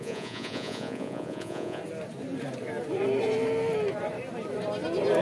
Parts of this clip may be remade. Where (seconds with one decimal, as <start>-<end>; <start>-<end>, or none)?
0.0-1.8